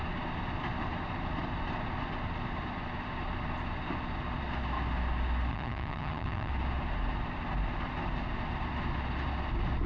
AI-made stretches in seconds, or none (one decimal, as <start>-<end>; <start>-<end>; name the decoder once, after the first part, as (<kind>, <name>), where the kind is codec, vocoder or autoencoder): 5.5-6.5 (vocoder, HiFi-GAN)